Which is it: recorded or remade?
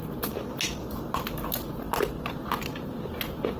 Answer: recorded